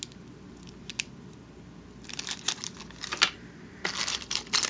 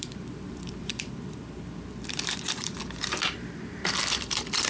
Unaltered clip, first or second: first